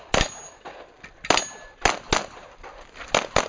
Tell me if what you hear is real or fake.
real